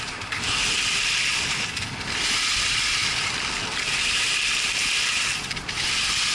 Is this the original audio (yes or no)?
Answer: yes